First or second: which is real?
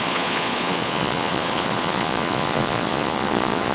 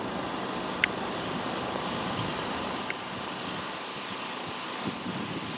second